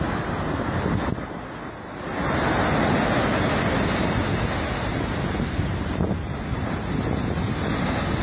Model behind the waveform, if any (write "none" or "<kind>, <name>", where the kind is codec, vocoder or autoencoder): none